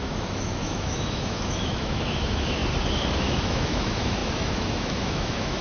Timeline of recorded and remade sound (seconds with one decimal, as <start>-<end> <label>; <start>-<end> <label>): 0.0-2.6 remade; 2.6-3.1 recorded; 3.1-5.6 remade